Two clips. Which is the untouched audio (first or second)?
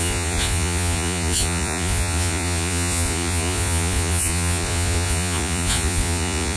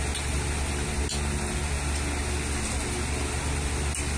second